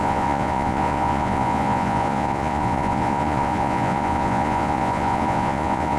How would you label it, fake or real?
fake